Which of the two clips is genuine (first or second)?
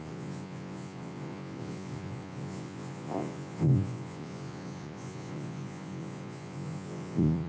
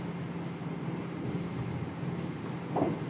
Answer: second